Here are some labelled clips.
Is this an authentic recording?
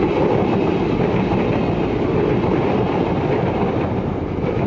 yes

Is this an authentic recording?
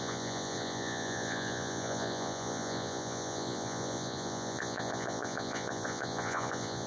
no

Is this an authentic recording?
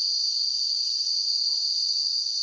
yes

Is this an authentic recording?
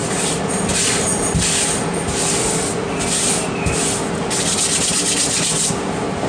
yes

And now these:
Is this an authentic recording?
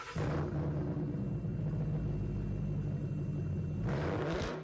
yes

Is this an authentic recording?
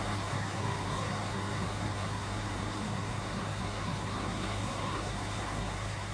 no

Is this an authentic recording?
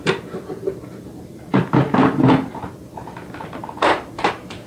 no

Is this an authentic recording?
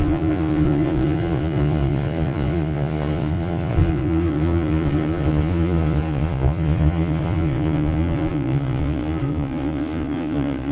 no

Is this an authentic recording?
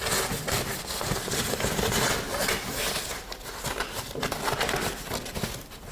yes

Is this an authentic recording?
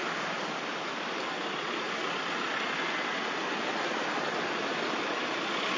yes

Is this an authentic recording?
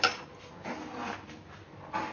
yes